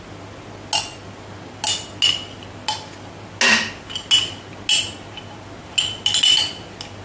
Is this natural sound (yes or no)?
yes